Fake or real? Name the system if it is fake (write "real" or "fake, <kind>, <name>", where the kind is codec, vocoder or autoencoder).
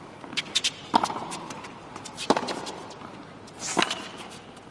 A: real